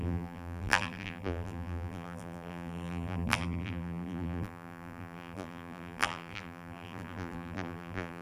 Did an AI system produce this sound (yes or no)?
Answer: yes